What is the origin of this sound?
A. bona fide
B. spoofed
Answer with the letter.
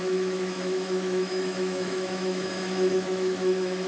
B